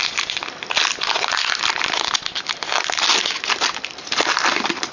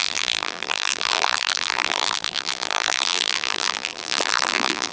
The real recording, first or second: first